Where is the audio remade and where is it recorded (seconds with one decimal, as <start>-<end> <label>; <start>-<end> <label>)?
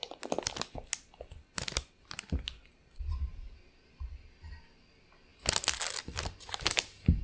0.0-7.2 recorded